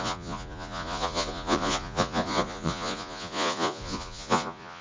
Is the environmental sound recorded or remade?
remade